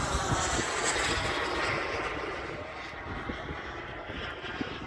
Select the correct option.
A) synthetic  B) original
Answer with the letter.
B